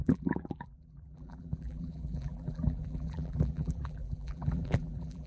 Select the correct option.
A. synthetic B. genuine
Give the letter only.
A